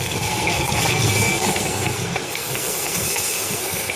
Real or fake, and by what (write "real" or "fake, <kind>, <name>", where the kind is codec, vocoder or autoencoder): fake, codec, SNAC